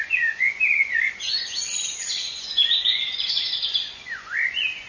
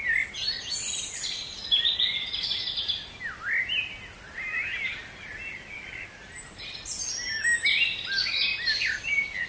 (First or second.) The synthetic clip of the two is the first